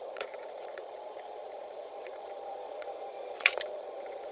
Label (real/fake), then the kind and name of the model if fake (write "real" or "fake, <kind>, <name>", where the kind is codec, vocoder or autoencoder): fake, vocoder, Vocos